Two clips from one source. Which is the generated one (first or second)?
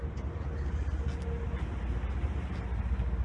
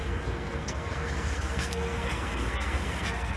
second